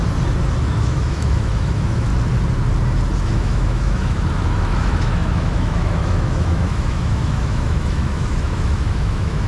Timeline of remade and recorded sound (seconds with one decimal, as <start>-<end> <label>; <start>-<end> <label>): 0.0-0.8 recorded; 0.8-2.1 remade; 2.1-3.2 recorded; 3.2-9.5 remade